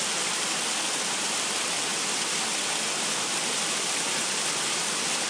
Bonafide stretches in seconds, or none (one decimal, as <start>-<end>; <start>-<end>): 0.0-5.3